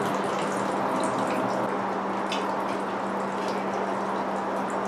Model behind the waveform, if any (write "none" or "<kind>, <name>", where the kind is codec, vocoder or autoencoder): none